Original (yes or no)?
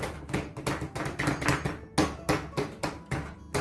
yes